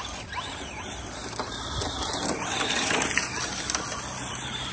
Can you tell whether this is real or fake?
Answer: real